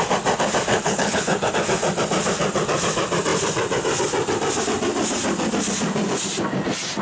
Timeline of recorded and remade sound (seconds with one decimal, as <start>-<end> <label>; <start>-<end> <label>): 0.0-0.7 recorded; 0.7-1.5 remade; 1.5-7.0 recorded